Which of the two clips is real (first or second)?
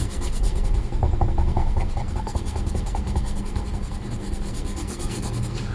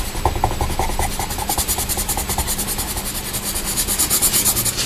second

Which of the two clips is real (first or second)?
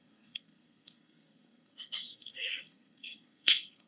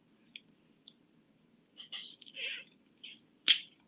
second